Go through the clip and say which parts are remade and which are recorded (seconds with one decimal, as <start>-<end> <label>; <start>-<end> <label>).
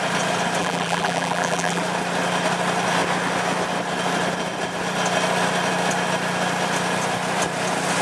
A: 0.0-0.6 recorded; 0.6-1.8 remade; 1.8-8.0 recorded